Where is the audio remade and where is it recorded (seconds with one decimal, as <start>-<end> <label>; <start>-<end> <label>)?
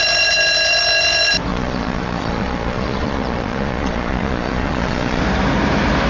0.0-1.5 recorded; 1.5-5.2 remade; 5.2-6.1 recorded